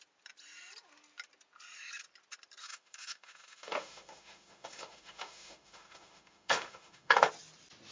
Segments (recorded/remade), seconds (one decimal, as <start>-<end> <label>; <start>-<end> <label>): 0.0-2.6 recorded; 2.6-7.3 remade; 7.3-7.9 recorded